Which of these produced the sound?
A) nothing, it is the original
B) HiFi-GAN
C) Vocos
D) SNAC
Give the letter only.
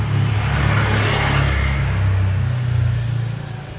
A